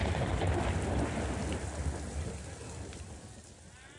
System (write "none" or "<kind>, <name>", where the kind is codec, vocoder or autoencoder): none